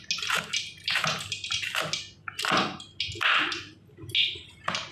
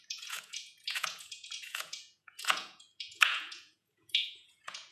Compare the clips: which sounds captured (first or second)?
first